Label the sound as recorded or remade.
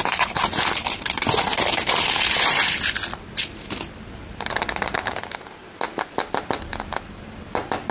recorded